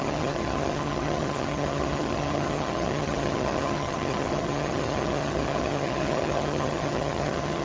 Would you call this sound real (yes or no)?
no